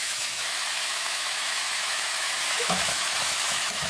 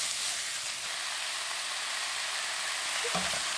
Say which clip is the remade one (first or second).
first